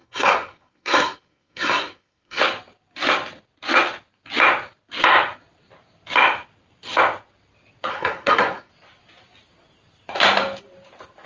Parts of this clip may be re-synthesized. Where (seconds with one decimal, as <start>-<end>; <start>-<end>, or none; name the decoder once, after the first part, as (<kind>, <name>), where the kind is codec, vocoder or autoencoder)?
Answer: 0.0-2.4 (codec, SNAC); 7.9-8.7